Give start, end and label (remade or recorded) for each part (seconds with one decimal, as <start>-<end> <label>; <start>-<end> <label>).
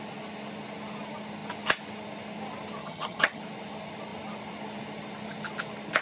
0.0-2.8 recorded; 2.8-3.4 remade; 3.4-6.0 recorded